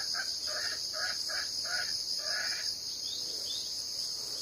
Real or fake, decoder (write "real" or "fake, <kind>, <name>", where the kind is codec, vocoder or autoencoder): real